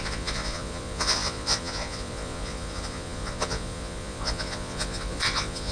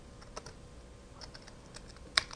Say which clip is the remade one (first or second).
first